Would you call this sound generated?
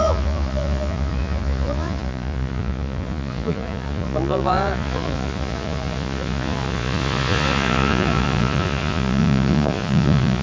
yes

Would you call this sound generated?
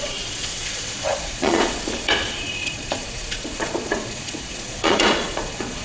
yes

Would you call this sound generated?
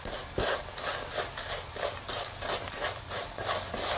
no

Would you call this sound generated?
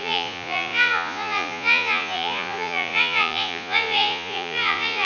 yes